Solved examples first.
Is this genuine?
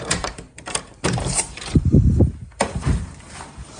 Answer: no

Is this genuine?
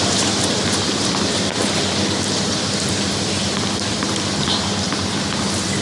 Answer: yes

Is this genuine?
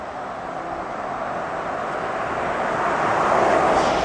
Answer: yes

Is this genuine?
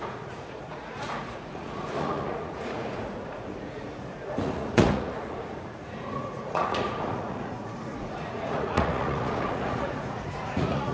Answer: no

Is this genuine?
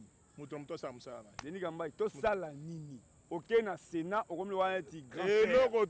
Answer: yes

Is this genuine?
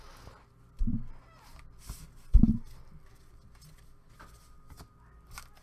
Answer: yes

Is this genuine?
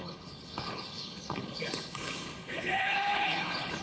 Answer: no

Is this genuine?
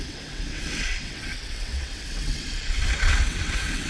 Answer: no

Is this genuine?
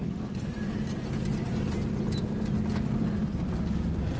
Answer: yes